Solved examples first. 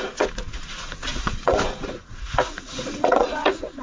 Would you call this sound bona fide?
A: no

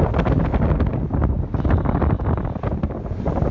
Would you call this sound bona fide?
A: yes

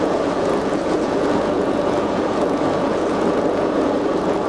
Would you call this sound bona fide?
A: no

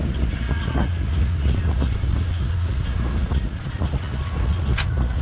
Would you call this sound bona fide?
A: no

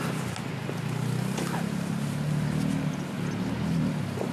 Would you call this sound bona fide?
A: yes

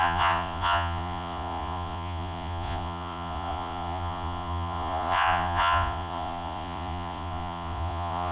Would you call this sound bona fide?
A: no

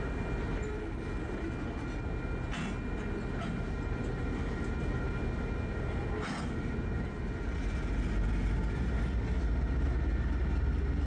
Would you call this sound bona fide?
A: yes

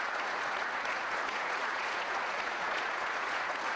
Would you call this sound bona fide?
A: no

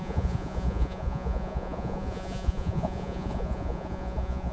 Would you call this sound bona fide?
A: no